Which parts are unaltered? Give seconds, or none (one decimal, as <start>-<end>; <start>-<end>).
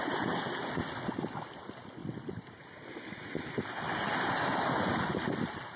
0.0-5.8